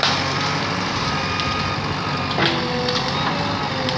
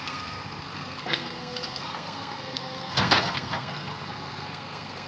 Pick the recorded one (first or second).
first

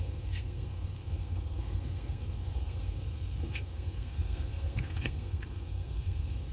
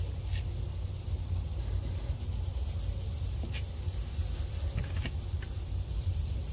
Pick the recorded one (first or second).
second